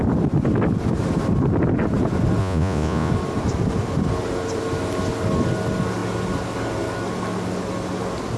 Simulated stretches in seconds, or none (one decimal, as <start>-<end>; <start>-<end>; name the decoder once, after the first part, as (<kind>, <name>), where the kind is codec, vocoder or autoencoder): 2.4-3.1 (vocoder, Vocos)